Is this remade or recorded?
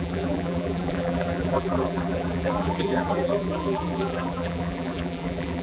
remade